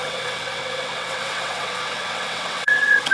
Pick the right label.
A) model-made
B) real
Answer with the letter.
A